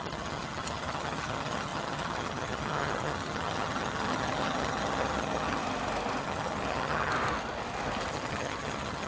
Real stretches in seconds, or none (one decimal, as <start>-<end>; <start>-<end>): 5.6-6.2; 7.1-8.1